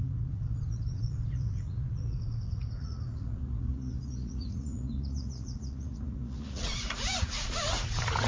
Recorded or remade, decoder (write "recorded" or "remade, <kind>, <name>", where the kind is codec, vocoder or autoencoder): remade, vocoder, Vocos